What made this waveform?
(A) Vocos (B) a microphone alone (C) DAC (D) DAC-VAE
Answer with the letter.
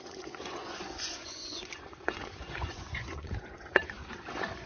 A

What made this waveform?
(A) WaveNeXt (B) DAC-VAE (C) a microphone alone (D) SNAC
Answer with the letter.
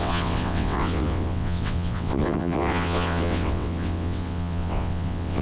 A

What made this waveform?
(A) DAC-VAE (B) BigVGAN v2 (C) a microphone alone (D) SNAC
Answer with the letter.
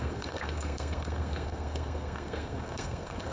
D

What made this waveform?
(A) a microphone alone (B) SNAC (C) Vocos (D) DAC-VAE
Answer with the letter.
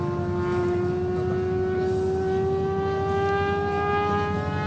A